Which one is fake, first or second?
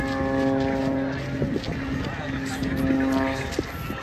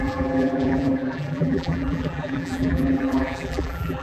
second